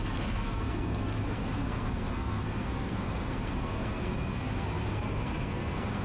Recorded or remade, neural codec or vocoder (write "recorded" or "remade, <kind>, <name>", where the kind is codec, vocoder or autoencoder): remade, codec, SNAC